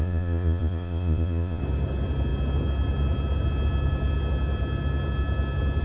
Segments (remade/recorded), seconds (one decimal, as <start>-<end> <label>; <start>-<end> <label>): 0.0-1.6 remade; 1.6-5.8 recorded